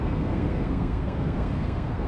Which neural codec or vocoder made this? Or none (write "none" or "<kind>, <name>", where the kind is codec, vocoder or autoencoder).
codec, SNAC